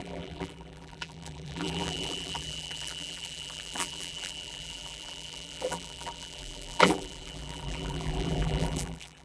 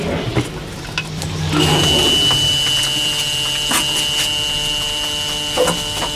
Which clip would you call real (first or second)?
second